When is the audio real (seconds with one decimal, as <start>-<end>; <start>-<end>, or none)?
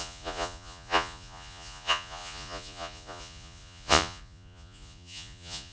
none